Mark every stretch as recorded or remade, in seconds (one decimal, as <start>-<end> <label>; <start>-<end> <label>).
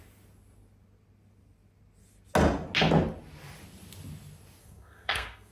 0.0-4.6 recorded; 4.6-5.5 remade